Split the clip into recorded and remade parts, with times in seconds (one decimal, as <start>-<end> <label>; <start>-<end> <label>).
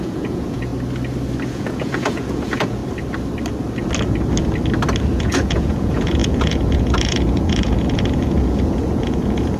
0.0-0.7 remade; 0.7-1.5 recorded; 1.5-2.8 remade; 2.8-5.2 recorded; 5.2-9.6 remade